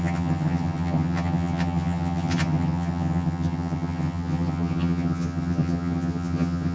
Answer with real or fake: fake